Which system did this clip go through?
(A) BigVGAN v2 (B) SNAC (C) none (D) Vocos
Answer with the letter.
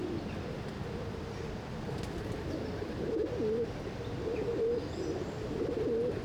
C